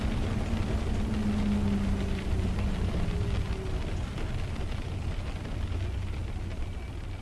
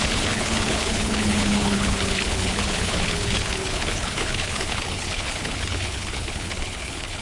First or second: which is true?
first